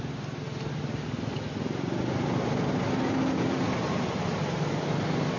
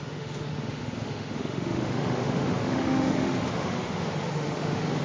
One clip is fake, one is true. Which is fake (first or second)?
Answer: second